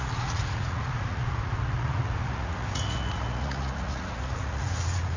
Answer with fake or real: fake